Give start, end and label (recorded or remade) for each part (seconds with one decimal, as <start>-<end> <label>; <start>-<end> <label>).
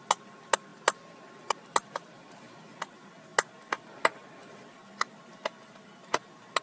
0.0-6.6 recorded